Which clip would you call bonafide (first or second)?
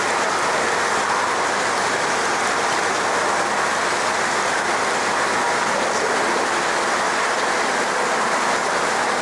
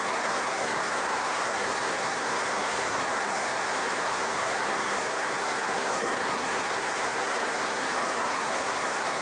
first